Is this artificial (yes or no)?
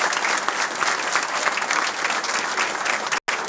no